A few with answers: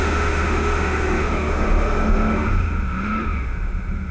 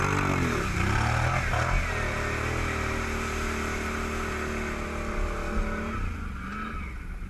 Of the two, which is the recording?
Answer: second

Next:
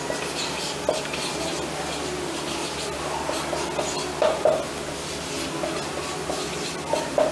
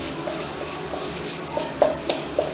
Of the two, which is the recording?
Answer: first